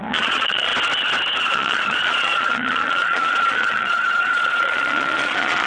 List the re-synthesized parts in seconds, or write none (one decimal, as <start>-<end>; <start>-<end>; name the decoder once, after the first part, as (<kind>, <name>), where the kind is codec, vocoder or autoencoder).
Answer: 0.0-0.7 (vocoder, Vocos); 1.4-5.7